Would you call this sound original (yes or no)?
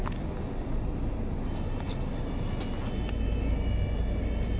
yes